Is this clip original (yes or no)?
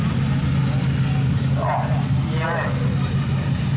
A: yes